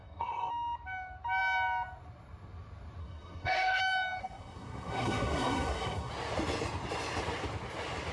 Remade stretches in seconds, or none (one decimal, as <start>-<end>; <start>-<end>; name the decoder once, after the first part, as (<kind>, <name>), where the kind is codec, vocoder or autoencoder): 0.0-0.5 (codec, SNAC); 3.0-3.8; 4.2-6.1